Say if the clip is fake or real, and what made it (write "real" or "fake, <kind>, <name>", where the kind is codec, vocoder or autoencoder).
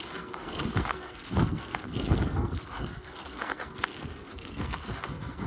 fake, codec, SNAC